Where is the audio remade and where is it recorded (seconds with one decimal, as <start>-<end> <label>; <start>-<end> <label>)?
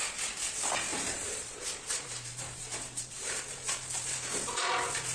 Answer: 0.0-0.9 recorded; 0.9-3.4 remade; 3.4-5.1 recorded